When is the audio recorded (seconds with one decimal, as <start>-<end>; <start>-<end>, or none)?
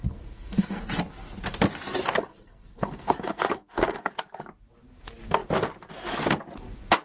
0.8-2.3; 4.1-7.0